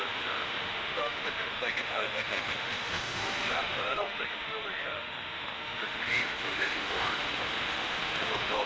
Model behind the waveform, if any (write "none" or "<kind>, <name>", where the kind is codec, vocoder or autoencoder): autoencoder, DAC-VAE